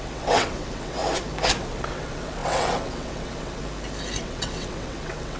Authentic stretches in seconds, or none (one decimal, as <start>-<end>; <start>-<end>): 1.0-1.6; 3.6-4.2